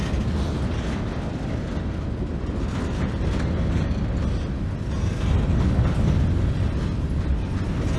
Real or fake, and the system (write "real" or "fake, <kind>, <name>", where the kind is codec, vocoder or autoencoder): real